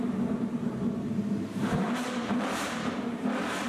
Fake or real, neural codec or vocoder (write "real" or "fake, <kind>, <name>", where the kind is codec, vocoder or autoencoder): fake, vocoder, BigVGAN v2